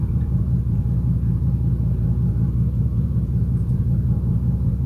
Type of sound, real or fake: fake